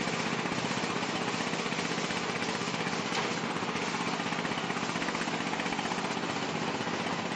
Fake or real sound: real